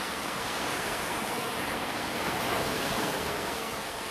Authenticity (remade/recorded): remade